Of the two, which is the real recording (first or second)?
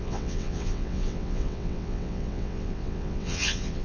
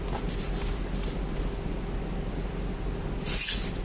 second